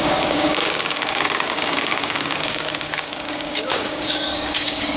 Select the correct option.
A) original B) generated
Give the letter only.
B